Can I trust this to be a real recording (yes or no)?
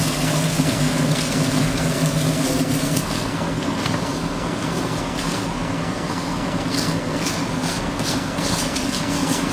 no